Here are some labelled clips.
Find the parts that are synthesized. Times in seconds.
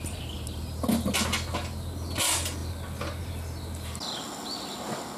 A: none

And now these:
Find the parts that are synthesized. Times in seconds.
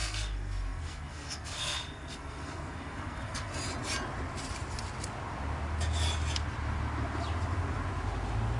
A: 0.0-3.5 (codec, SNAC)